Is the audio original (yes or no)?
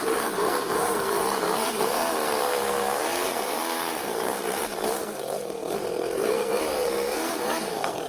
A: no